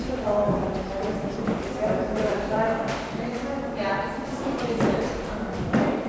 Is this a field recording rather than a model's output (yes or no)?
no